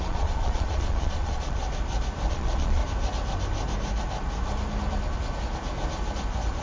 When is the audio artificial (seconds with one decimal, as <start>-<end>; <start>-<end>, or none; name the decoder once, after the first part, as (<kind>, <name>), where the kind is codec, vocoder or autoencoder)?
0.0-1.6 (vocoder, Vocos); 2.3-2.8